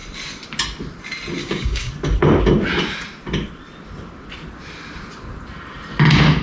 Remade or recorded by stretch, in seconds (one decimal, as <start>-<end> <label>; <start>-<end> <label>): 0.0-1.4 recorded; 1.4-1.9 remade; 1.9-6.4 recorded